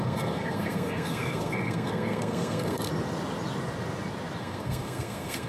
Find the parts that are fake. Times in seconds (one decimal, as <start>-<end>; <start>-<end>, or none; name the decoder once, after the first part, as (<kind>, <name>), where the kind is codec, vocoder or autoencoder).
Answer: 0.0-2.9 (codec, SNAC); 4.4-5.5